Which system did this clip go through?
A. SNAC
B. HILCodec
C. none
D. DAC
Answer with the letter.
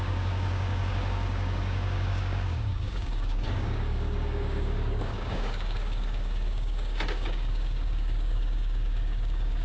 D